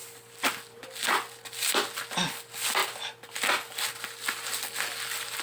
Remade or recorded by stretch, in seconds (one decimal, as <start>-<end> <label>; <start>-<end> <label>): 0.0-5.4 recorded